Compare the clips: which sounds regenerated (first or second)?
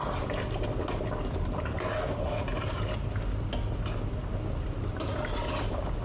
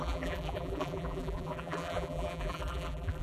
second